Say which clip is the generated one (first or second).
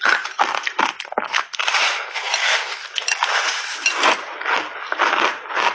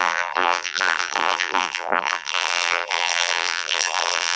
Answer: second